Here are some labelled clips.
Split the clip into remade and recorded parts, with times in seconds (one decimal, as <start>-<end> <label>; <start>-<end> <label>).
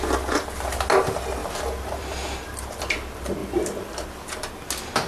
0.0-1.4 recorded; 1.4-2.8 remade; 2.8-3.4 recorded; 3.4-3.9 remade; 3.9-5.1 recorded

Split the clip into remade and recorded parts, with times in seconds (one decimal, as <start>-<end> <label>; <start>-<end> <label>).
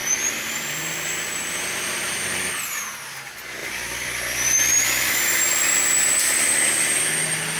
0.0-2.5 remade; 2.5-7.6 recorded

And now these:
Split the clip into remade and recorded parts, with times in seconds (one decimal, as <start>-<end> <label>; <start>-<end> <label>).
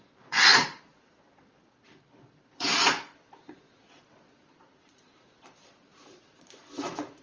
0.0-7.2 remade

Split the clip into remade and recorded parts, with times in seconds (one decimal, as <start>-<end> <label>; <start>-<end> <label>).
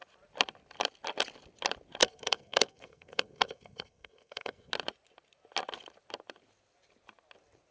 0.0-2.0 recorded; 2.0-4.7 remade; 4.7-7.7 recorded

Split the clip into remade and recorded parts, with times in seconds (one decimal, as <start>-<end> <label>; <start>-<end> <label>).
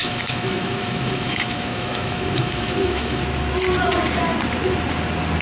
0.0-3.2 remade; 3.2-5.4 recorded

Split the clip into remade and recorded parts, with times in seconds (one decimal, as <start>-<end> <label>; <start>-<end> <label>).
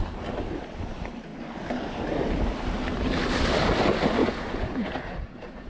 0.0-4.2 recorded; 4.2-5.7 remade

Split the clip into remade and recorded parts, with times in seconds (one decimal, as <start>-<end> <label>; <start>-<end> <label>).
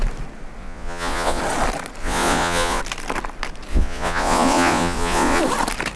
0.0-0.6 recorded; 0.6-1.4 remade; 1.4-2.0 recorded; 2.0-2.8 remade; 2.8-3.7 recorded; 3.7-5.4 remade; 5.4-6.0 recorded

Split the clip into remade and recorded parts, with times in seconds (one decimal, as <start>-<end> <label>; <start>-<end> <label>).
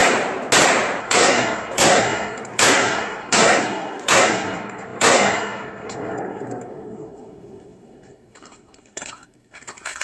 0.0-1.0 recorded; 1.0-10.0 remade